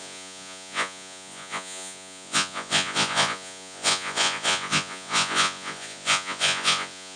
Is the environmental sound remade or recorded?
remade